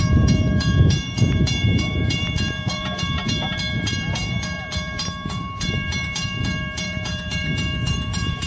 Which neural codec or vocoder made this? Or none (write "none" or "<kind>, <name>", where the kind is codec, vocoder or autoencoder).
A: vocoder, BigVGAN v2